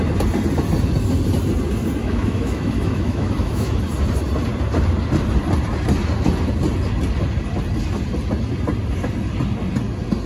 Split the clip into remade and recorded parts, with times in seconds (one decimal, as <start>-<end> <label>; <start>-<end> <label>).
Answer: 0.0-2.0 recorded; 2.0-3.8 remade; 3.8-10.3 recorded